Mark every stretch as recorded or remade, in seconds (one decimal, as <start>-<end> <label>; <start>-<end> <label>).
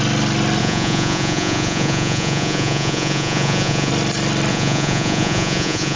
0.0-0.6 recorded; 0.6-3.9 remade; 3.9-4.5 recorded; 4.5-6.0 remade